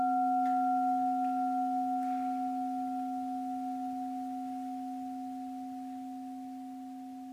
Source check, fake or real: real